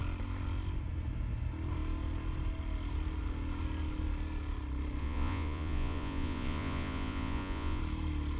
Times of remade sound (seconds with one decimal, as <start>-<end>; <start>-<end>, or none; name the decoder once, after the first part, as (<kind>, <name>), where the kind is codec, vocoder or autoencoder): 5.0-7.8 (vocoder, Vocos)